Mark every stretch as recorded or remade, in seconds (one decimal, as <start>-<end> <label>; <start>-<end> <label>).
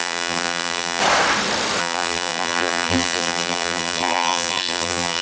0.0-1.0 remade; 1.0-1.8 recorded; 1.8-5.2 remade